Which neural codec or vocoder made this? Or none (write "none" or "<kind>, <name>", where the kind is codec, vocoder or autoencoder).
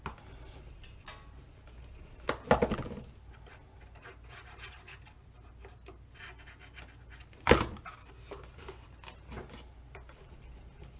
none